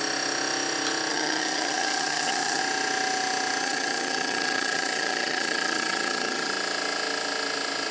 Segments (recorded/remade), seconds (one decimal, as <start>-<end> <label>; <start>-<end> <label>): 0.0-1.1 recorded; 1.1-2.6 remade; 2.6-3.6 recorded; 3.6-6.5 remade; 6.5-7.9 recorded

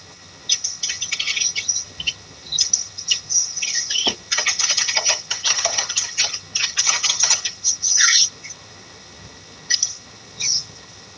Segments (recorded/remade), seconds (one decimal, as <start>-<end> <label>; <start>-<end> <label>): 0.0-11.2 remade

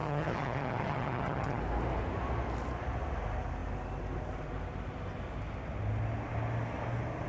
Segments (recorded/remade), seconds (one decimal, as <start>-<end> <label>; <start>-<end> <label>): 0.0-1.6 remade; 1.6-7.3 recorded